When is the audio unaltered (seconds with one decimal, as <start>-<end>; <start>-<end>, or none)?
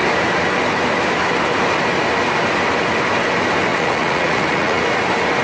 0.0-3.7; 4.8-5.4